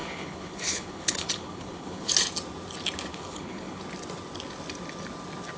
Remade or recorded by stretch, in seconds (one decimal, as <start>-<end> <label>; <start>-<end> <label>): 0.0-2.1 remade; 2.1-3.1 recorded; 3.1-3.8 remade; 3.8-5.6 recorded